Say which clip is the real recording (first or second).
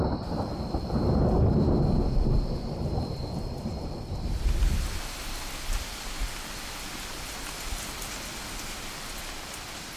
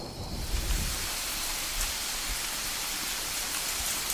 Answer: first